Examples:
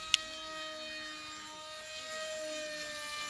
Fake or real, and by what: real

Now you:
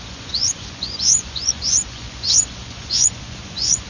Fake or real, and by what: fake, vocoder, Vocos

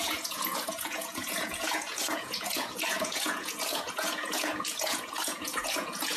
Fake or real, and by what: fake, vocoder, Vocos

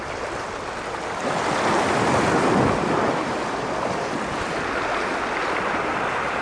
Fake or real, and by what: fake, vocoder, BigVGAN v2